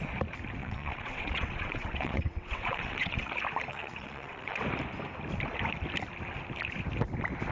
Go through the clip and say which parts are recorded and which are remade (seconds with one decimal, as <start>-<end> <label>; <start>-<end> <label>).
0.0-0.6 recorded; 0.6-3.3 remade; 3.3-3.7 recorded; 3.7-4.6 remade; 4.6-7.5 recorded